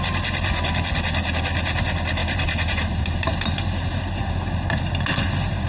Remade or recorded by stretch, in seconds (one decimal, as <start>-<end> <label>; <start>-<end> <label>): 0.0-2.2 recorded; 2.2-5.7 remade

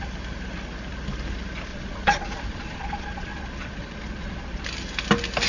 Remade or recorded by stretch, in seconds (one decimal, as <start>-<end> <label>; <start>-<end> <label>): 0.0-1.7 recorded; 1.7-4.6 remade; 4.6-5.5 recorded